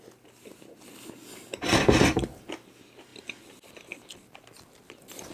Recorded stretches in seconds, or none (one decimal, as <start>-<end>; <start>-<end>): 0.0-5.3